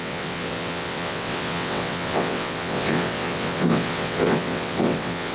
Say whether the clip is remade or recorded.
remade